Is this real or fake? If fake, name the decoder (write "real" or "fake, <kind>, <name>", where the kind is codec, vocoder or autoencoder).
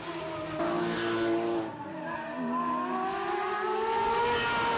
real